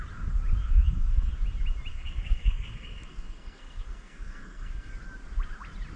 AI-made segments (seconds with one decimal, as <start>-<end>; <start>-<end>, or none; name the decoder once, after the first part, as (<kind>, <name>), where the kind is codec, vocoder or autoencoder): 0.6-1.3 (codec, SNAC); 1.9-4.9